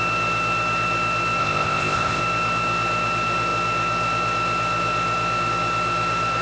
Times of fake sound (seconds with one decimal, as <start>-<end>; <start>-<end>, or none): 1.4-2.2